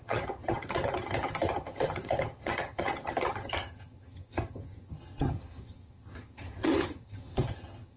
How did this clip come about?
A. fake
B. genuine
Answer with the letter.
A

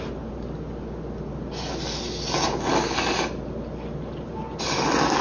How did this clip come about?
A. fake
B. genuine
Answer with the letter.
B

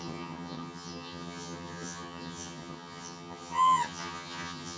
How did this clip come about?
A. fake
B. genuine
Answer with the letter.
A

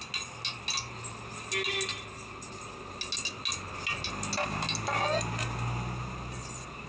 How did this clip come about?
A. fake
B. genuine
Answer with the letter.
B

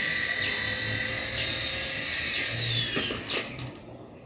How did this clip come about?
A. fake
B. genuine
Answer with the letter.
B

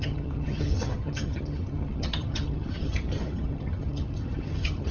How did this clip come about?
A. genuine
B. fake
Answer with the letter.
B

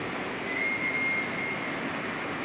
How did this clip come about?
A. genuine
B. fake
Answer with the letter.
A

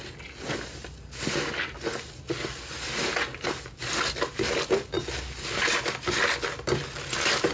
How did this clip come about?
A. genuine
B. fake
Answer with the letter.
A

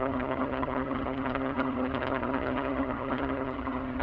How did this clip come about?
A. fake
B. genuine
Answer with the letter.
A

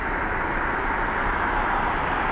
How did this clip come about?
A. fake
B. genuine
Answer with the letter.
B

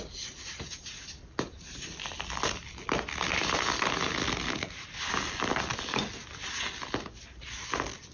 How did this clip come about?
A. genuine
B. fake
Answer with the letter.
A